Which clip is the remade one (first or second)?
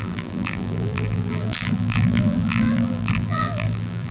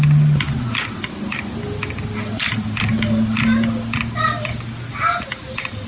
first